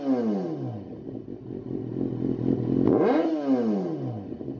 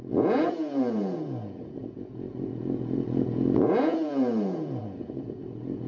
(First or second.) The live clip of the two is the first